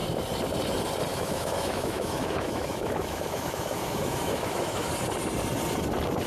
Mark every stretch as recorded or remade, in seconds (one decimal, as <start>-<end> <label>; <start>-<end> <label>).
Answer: 0.0-1.1 recorded; 1.1-4.9 remade; 4.9-6.3 recorded